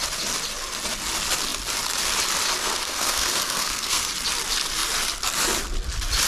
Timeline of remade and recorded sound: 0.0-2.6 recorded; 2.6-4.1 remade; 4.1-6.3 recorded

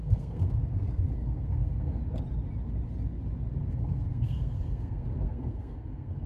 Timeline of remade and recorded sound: 0.0-2.0 remade; 2.0-3.7 recorded; 3.7-6.3 remade

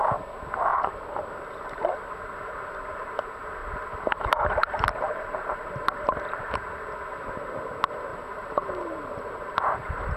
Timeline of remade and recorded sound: 0.0-0.7 recorded; 0.7-1.3 remade; 1.3-3.6 recorded; 3.6-6.6 remade; 6.6-8.1 recorded; 8.1-10.2 remade

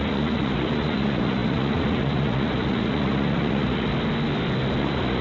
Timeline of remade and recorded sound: 0.0-3.9 remade; 3.9-4.8 recorded; 4.8-5.2 remade

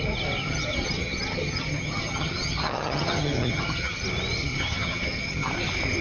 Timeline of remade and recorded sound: 0.0-0.4 recorded; 0.4-4.0 remade; 4.0-4.4 recorded; 4.4-5.5 remade; 5.5-6.0 recorded